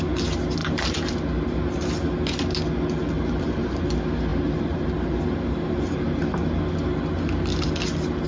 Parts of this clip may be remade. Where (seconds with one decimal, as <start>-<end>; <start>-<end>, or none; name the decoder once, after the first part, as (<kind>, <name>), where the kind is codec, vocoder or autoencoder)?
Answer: 3.0-3.9 (vocoder, BigVGAN v2); 4.3-6.6